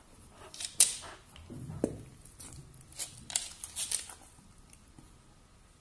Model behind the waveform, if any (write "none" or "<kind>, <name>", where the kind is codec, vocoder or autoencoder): none